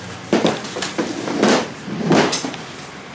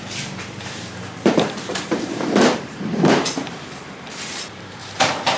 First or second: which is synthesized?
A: second